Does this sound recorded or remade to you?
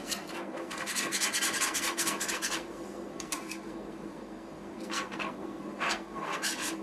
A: remade